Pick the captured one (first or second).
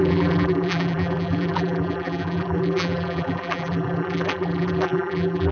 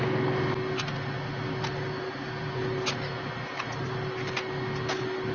second